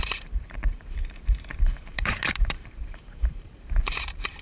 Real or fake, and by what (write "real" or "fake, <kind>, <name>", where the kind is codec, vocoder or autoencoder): fake, vocoder, BigVGAN v2